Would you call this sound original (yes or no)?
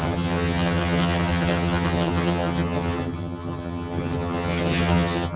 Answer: no